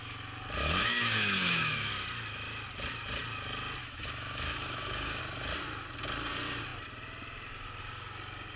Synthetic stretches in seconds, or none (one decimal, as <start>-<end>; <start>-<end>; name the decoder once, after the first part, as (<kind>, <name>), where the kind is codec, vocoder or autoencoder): 0.8-1.9 (autoencoder, DAC-VAE); 3.8-5.2